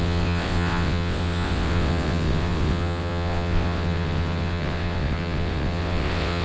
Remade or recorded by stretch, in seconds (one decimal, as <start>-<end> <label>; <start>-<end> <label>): 0.0-6.4 remade